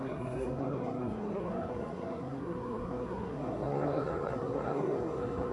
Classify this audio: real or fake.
fake